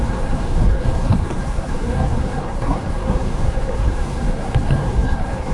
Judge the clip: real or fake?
fake